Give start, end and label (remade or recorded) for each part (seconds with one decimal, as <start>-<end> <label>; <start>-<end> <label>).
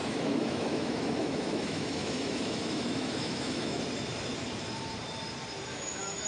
0.0-3.8 remade; 3.8-5.7 recorded; 5.7-6.3 remade